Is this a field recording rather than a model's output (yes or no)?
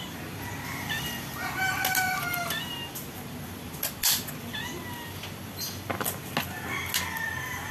yes